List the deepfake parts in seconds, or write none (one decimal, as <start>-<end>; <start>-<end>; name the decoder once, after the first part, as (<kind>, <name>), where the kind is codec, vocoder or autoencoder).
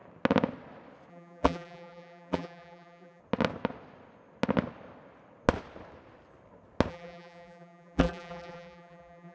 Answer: 1.1-3.2 (vocoder, BigVGAN v2); 6.9-9.3